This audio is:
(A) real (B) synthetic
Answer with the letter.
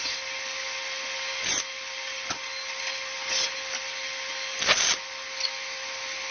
A